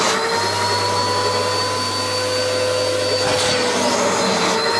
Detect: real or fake real